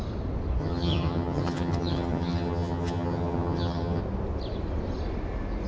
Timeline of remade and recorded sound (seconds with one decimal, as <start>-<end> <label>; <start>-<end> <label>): 0.0-0.6 recorded; 0.6-4.0 remade; 4.0-5.7 recorded